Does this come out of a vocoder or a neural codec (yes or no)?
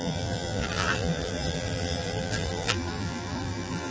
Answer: yes